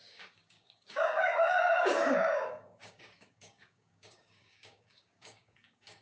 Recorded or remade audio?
remade